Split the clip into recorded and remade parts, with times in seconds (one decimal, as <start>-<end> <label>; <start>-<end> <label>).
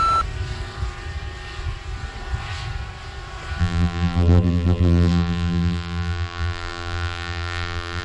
0.0-3.6 recorded; 3.6-8.0 remade